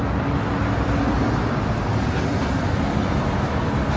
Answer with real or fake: real